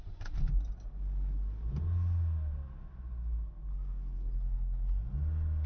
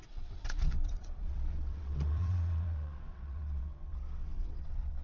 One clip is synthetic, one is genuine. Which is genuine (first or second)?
first